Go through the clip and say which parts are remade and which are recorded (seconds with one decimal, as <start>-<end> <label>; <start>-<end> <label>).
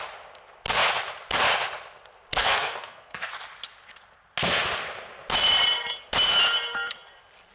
0.0-2.3 recorded; 2.3-3.3 remade; 3.3-7.5 recorded